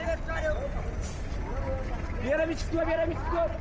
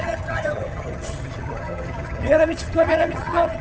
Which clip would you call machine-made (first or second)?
second